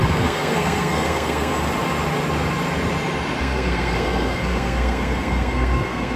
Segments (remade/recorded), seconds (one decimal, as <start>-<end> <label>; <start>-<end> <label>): 0.0-1.5 remade; 1.5-3.4 recorded; 3.4-6.2 remade